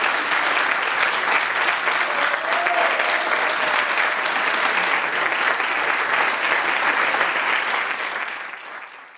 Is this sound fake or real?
real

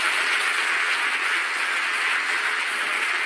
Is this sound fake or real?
fake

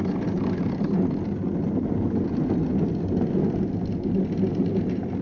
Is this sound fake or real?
real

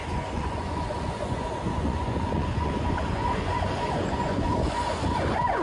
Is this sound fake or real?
fake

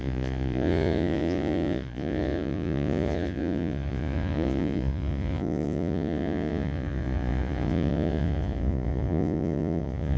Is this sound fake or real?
fake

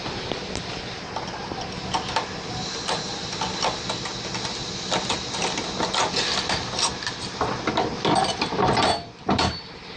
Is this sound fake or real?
real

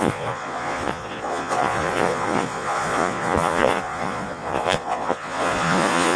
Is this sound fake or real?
fake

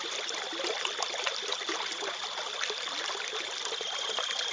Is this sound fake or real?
real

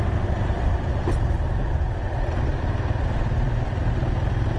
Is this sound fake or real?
real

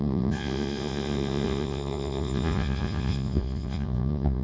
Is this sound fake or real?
fake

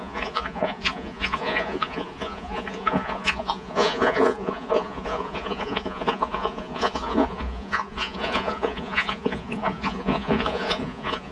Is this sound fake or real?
fake